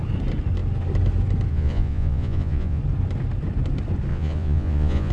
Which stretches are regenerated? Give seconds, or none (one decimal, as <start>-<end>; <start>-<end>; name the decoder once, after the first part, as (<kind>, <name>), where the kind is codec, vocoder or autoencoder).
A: 1.5-2.8 (vocoder, Vocos); 4.1-5.1